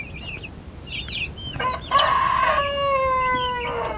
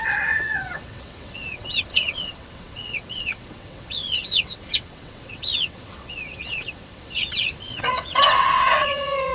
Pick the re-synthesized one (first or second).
second